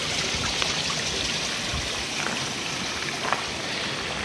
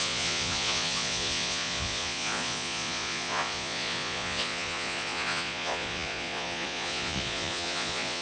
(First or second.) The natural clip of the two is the first